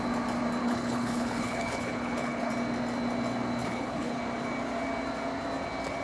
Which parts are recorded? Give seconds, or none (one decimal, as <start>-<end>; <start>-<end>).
0.0-0.6; 2.5-3.6; 4.2-6.0